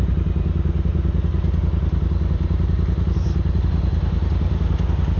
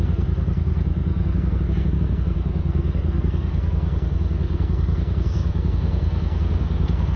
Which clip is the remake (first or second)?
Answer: second